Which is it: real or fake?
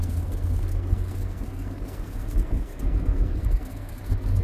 fake